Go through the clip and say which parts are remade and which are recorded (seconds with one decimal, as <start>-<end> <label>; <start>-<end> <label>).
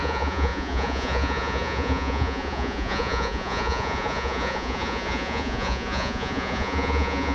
0.0-7.3 remade